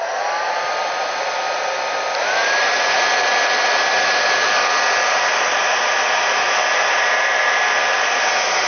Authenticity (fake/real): real